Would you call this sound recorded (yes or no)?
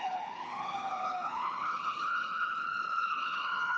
no